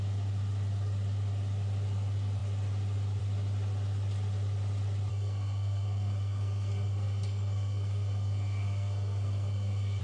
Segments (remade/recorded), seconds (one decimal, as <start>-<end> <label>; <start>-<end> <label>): 0.0-5.1 recorded; 5.1-10.0 remade

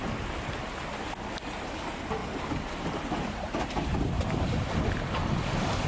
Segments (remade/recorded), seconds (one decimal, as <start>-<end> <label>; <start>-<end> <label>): 0.0-2.2 recorded; 2.2-4.1 remade; 4.1-5.9 recorded

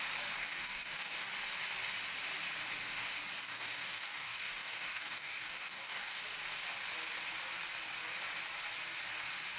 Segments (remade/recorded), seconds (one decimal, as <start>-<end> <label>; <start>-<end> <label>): 0.0-0.4 recorded; 0.4-1.3 remade; 1.3-3.4 recorded; 3.4-6.2 remade; 6.2-9.6 recorded